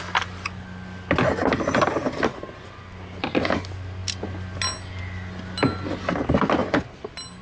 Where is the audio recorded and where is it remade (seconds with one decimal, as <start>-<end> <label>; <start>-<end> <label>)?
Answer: 0.0-7.4 recorded